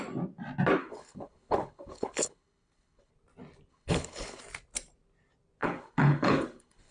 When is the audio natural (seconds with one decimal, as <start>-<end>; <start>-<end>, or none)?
0.0-0.8; 3.1-3.7; 4.4-5.6